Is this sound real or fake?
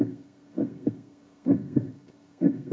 fake